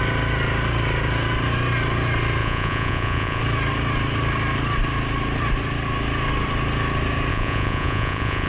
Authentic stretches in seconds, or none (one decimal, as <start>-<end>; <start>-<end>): 0.0-2.4; 3.4-7.3